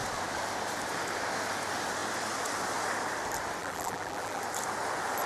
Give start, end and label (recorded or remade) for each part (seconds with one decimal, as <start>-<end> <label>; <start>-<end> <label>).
0.0-3.6 recorded; 3.6-4.4 remade; 4.4-5.3 recorded